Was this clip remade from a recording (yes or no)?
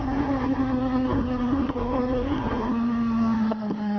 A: yes